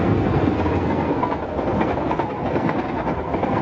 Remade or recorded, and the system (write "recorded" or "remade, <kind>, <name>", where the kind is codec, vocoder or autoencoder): remade, codec, SNAC